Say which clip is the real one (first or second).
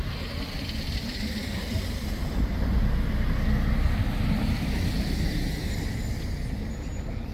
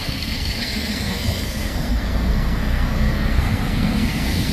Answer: first